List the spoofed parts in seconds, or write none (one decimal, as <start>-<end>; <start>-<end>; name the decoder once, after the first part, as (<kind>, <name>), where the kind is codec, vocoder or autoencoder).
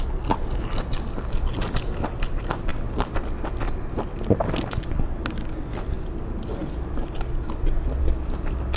none